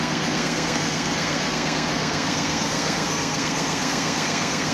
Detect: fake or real fake